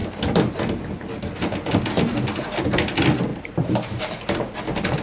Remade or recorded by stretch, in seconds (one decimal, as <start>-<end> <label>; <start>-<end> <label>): 0.0-3.3 recorded; 3.3-4.4 remade; 4.4-5.0 recorded